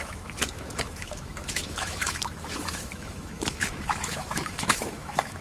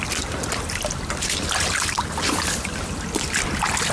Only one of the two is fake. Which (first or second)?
first